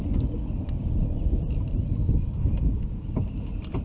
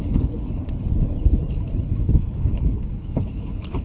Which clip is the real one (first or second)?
first